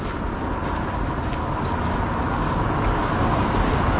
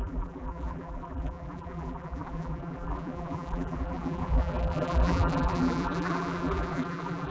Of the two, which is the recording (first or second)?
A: first